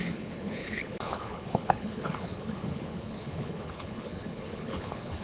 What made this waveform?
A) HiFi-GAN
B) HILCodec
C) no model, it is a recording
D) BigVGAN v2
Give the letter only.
B